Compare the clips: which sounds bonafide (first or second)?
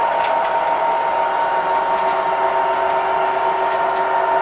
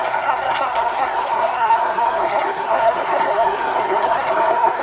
first